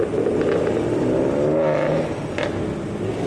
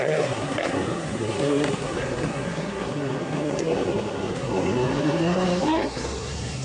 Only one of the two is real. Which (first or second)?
first